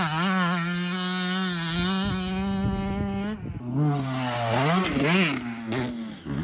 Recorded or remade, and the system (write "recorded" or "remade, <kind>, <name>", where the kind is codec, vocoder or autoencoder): recorded